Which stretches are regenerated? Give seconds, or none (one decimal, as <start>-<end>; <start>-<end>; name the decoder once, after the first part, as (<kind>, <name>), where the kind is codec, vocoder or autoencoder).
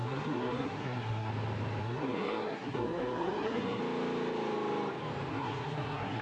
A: 0.0-1.3 (codec, SNAC); 1.8-3.8; 5.3-6.2